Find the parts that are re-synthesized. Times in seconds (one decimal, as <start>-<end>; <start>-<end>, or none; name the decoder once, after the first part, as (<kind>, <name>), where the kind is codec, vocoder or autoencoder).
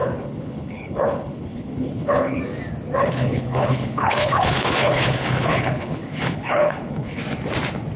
0.0-2.4 (codec, HILCodec); 3.0-7.2